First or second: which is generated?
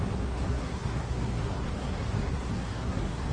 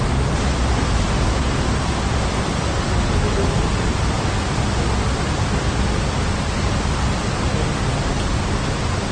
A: first